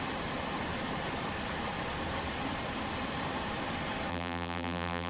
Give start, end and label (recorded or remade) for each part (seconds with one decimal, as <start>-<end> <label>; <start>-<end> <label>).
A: 0.0-4.1 recorded; 4.1-5.1 remade